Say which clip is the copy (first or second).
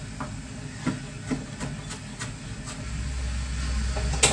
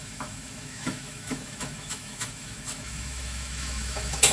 second